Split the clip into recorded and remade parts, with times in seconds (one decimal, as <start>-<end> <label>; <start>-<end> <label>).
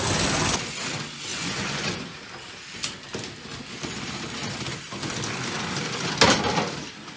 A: 0.0-1.3 recorded; 1.3-2.0 remade; 2.0-7.2 recorded